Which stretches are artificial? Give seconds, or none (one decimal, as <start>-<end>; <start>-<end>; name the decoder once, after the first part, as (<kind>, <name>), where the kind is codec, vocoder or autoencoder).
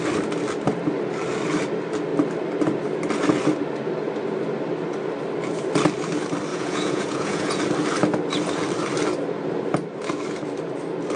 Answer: 6.5-7.6 (vocoder, Vocos)